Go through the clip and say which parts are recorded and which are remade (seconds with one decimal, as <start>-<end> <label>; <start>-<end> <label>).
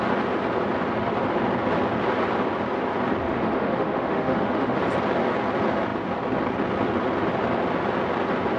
0.0-3.2 recorded; 3.2-4.8 remade; 4.8-8.6 recorded